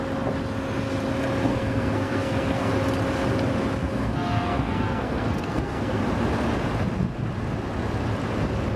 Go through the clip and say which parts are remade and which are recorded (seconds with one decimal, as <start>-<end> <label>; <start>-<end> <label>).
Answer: 0.0-1.5 recorded; 1.5-2.7 remade; 2.7-3.8 recorded; 3.8-6.0 remade; 6.0-8.8 recorded